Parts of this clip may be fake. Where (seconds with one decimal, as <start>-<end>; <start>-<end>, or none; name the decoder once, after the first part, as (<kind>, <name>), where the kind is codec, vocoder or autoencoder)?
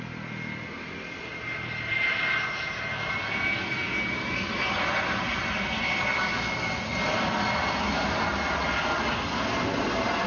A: none